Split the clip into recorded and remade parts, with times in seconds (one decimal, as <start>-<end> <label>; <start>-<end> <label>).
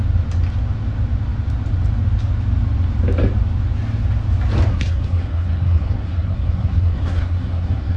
0.0-4.7 recorded; 4.7-8.0 remade